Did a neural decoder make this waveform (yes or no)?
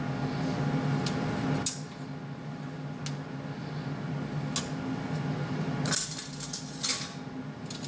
no